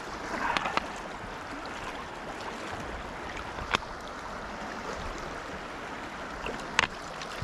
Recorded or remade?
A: recorded